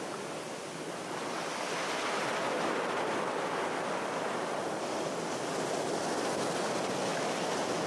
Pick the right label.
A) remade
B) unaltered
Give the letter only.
B